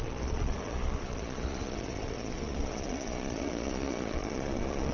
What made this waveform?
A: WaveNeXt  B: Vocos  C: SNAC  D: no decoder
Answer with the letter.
B